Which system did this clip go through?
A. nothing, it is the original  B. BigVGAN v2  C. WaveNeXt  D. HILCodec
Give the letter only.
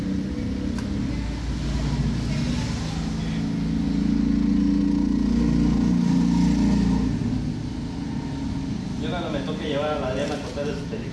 A